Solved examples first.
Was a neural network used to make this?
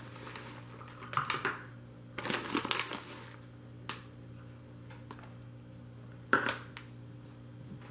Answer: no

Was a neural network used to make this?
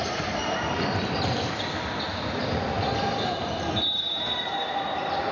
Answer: no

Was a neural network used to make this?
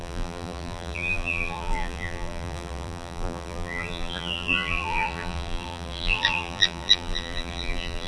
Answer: yes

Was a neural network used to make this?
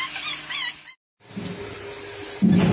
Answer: no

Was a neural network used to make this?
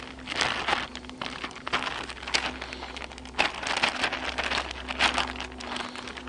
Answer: no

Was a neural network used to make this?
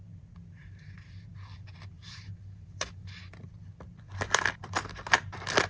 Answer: no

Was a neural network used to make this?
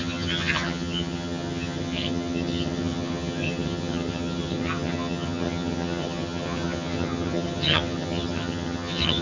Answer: yes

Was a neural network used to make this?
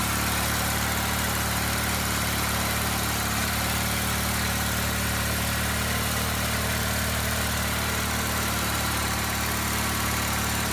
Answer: yes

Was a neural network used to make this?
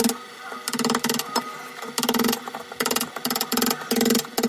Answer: no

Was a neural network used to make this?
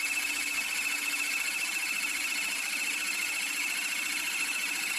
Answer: no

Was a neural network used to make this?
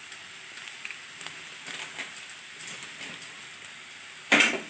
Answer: no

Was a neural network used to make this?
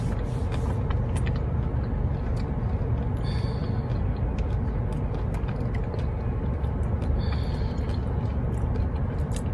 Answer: no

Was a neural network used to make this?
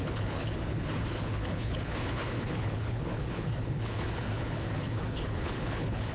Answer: yes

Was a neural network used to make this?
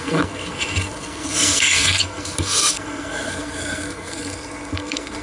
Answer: yes